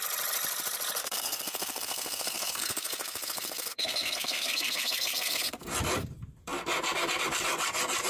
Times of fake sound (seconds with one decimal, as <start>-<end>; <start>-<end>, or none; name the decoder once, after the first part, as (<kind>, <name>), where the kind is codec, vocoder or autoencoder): 1.0-5.5 (codec, SNAC)